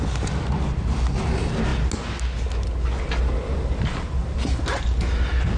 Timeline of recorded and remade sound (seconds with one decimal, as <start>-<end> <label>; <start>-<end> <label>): 0.0-5.6 recorded